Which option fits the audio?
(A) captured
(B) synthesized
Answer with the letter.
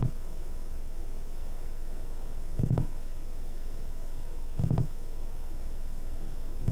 B